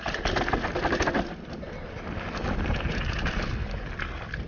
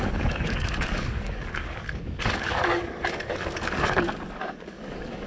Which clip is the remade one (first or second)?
second